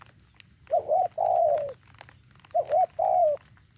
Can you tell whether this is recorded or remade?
recorded